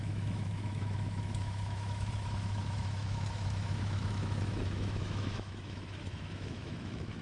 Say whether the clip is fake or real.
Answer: fake